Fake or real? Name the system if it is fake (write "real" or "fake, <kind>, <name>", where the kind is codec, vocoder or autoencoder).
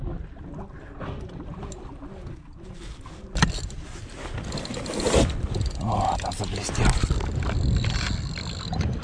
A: real